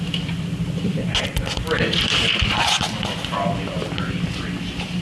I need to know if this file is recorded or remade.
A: recorded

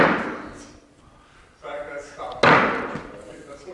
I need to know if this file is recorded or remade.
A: recorded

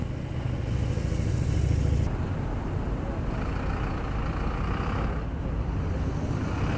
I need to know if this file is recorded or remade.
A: recorded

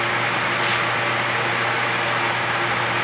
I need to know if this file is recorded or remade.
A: remade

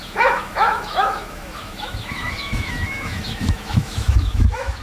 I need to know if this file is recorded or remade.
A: remade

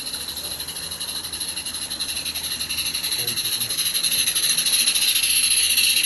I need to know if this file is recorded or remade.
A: recorded